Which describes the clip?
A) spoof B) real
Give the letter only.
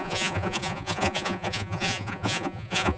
A